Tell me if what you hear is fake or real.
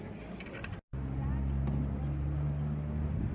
real